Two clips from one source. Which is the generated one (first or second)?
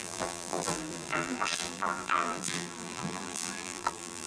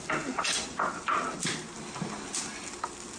first